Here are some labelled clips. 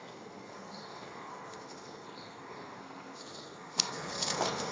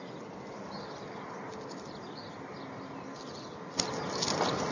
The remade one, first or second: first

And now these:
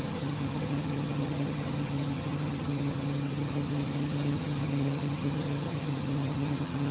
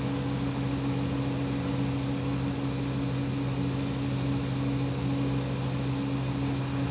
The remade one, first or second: first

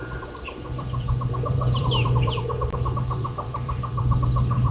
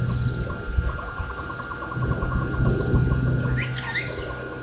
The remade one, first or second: first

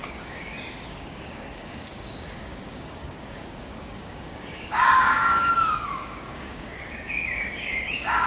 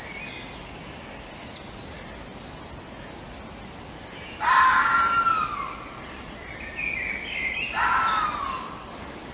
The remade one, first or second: first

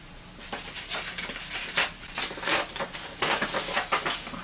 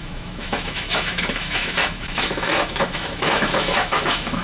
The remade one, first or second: second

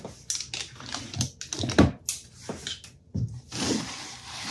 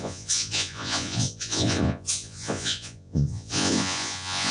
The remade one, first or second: second